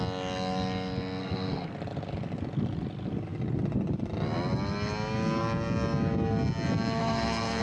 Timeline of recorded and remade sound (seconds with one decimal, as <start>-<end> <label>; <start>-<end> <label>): 0.0-1.2 recorded; 1.2-1.7 remade; 1.7-7.0 recorded; 7.0-7.6 remade